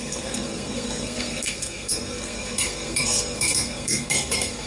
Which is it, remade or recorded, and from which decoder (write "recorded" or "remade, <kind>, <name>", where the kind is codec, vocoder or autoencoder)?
remade, codec, SNAC